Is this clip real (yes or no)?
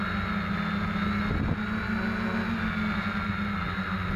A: yes